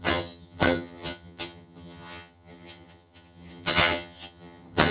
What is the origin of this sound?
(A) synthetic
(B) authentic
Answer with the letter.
A